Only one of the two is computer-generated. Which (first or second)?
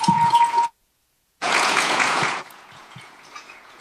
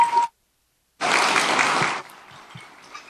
first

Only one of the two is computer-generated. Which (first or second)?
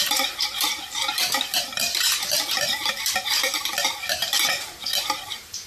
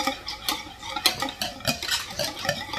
first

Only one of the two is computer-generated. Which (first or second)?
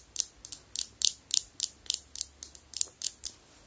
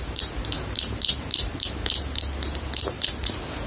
second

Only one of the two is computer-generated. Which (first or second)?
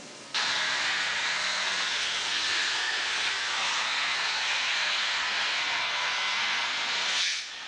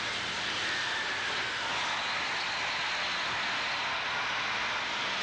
first